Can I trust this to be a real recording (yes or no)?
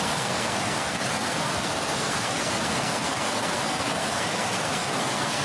no